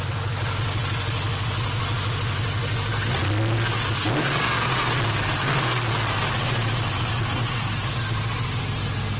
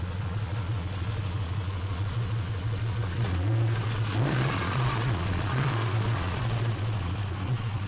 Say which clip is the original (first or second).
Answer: first